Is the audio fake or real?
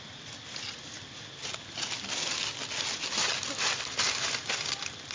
real